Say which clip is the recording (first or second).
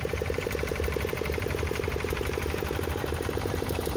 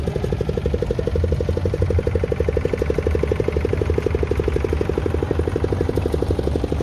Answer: second